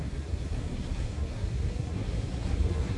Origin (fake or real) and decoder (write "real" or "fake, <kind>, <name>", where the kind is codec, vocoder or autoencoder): fake, codec, SNAC